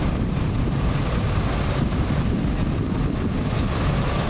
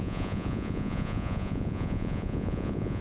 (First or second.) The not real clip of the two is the second